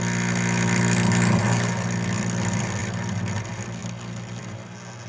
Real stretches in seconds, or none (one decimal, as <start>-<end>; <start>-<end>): 0.0-5.1